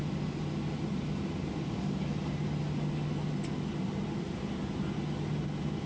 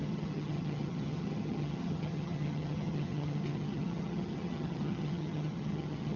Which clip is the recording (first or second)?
first